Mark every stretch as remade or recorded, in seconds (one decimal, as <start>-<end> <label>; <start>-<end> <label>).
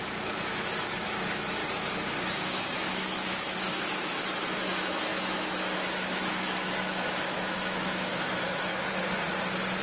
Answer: 0.0-1.6 remade; 1.6-2.4 recorded; 2.4-8.7 remade; 8.7-9.8 recorded